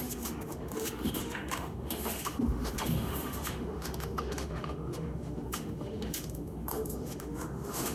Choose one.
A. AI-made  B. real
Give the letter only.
A